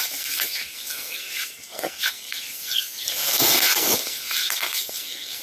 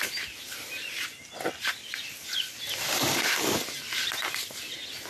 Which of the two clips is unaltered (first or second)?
second